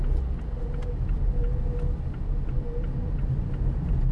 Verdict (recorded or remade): recorded